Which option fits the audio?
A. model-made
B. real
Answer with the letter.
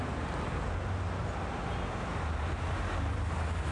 B